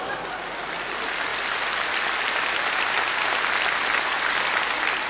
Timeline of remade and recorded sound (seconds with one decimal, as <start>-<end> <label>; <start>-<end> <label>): 0.0-5.1 recorded